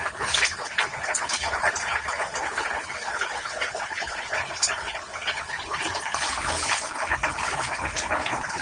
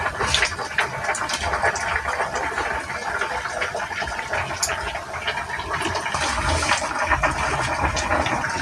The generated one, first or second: first